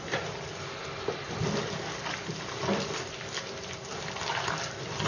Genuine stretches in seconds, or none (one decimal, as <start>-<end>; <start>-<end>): 0.0-5.1